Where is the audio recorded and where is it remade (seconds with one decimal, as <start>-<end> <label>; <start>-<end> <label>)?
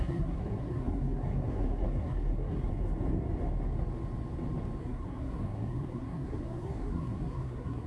0.0-2.7 remade; 2.7-4.8 recorded; 4.8-7.9 remade